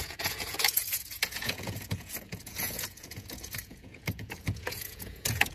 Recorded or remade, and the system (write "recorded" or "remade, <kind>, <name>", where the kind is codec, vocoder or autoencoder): remade, vocoder, Vocos